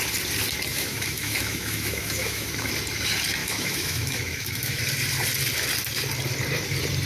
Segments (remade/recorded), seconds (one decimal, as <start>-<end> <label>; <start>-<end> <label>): 0.0-0.7 recorded; 0.7-2.7 remade; 2.7-3.4 recorded; 3.4-4.8 remade; 4.8-7.1 recorded